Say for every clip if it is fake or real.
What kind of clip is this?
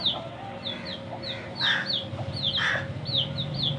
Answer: real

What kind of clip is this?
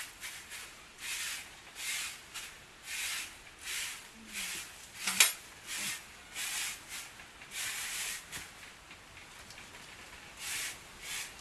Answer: real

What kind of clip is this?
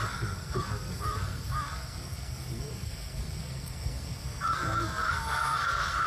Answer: fake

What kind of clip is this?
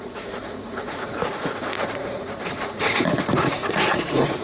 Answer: fake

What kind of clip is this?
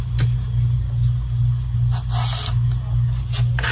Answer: real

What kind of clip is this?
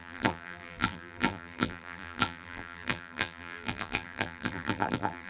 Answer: fake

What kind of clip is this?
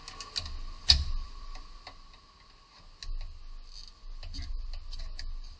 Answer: real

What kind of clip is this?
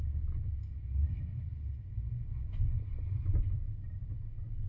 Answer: real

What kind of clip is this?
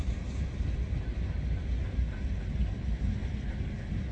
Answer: real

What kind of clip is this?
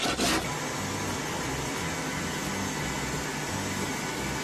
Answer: real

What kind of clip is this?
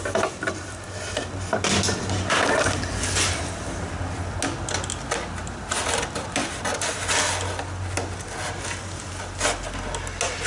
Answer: real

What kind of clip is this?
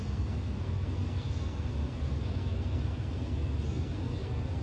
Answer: fake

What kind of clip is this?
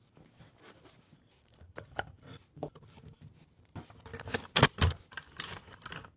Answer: real